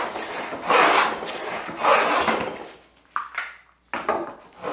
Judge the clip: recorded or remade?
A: recorded